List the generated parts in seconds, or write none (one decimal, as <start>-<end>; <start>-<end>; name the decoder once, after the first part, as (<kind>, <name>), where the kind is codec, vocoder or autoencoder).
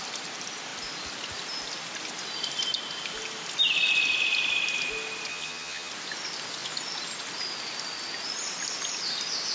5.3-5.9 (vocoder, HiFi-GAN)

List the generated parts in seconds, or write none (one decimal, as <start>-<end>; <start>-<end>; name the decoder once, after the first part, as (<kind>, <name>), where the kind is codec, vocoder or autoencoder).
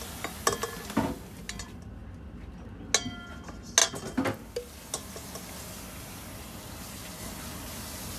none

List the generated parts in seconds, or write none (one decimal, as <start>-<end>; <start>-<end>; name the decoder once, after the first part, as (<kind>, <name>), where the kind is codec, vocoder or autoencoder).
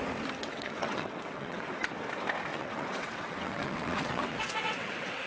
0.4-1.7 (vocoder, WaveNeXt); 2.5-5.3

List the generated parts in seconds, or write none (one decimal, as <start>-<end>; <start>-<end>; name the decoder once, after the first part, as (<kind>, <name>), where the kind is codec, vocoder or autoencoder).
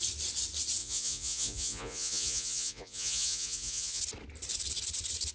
0.8-4.0 (vocoder, Vocos)